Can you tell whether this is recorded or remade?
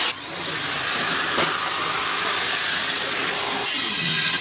recorded